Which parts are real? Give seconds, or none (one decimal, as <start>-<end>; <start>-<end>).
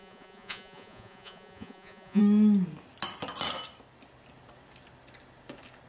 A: 2.2-5.9